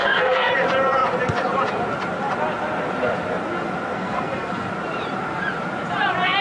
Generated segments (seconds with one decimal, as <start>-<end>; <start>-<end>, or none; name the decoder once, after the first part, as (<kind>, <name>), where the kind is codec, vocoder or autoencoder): 0.0-0.5 (codec, SNAC); 3.9-4.7